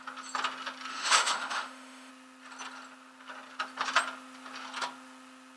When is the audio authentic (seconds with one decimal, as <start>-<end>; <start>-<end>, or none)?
0.0-0.9; 2.1-5.6